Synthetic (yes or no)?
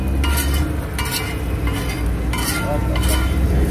no